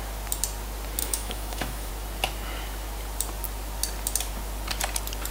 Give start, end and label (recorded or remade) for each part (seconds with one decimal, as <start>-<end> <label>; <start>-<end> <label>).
0.0-1.0 recorded; 1.0-1.9 remade; 1.9-5.3 recorded